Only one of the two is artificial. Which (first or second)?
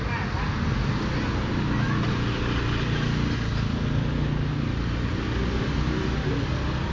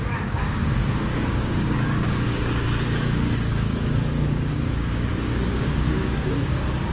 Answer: second